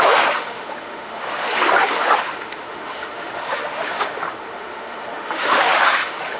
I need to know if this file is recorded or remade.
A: remade